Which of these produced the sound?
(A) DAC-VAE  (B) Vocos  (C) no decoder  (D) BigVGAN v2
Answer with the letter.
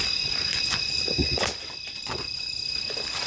D